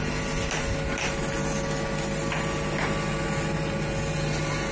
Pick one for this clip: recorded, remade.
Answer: recorded